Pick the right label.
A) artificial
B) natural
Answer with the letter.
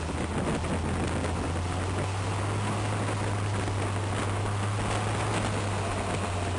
B